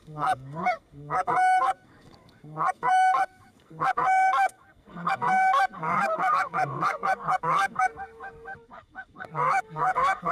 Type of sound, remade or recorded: remade